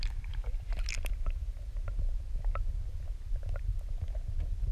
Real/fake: real